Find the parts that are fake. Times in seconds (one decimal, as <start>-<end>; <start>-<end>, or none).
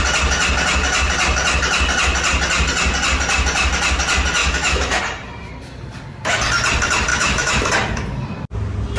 4.4-5.0; 7.1-7.7